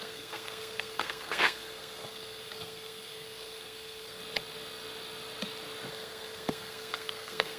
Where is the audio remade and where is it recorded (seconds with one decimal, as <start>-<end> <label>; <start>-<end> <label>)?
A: 0.0-4.2 remade; 4.2-5.9 recorded; 5.9-7.6 remade